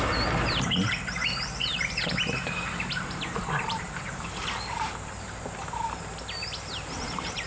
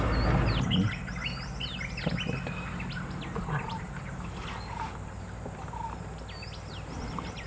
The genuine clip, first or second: second